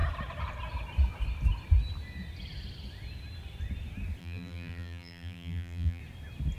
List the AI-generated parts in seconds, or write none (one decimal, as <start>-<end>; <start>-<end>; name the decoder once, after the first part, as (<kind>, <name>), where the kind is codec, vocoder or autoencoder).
4.2-6.0 (vocoder, BigVGAN v2)